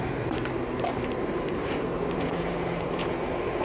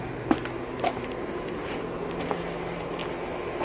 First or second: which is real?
second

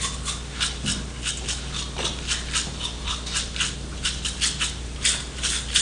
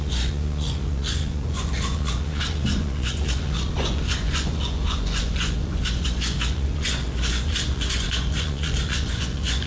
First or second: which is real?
first